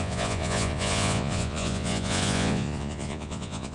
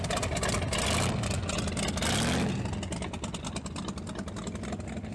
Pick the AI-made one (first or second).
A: first